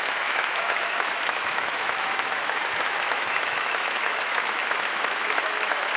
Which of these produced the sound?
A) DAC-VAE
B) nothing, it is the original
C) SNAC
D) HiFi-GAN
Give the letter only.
A